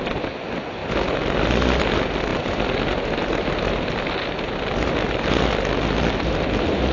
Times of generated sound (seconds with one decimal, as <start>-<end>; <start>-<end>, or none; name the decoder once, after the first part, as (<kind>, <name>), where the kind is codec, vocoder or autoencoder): none